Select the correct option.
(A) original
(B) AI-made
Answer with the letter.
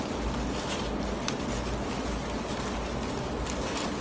A